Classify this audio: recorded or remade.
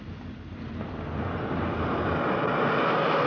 recorded